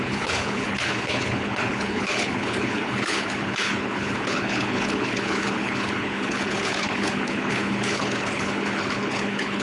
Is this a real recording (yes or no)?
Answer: no